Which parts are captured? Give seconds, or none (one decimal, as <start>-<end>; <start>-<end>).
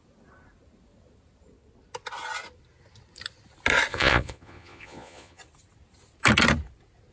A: 0.0-3.9; 5.4-7.1